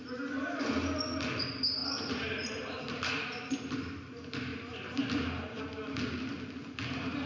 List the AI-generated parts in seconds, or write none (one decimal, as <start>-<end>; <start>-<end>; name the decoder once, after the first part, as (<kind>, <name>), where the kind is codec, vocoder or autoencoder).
1.8-3.1 (vocoder, BigVGAN v2); 4.5-5.6